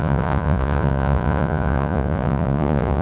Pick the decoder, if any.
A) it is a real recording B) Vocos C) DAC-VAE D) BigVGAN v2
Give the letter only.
B